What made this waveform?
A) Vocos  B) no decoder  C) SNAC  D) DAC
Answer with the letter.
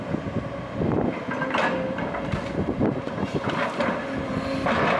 B